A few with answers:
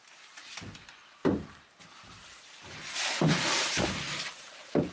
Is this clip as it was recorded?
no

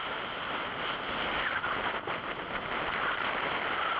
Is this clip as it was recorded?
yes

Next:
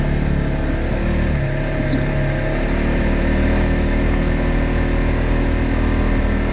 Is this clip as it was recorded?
yes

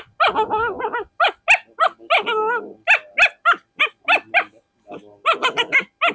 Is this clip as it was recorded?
yes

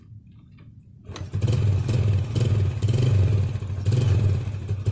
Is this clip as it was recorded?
yes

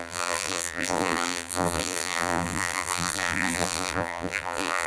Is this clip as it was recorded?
no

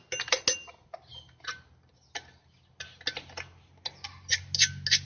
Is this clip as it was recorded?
yes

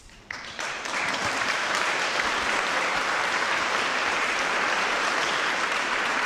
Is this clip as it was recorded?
no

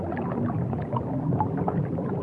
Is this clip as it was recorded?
no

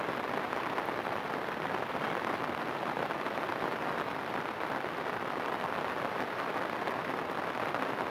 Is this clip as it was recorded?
no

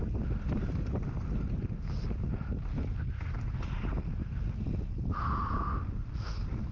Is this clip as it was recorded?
yes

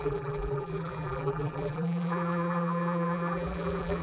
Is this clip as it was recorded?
no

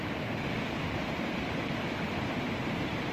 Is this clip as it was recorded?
no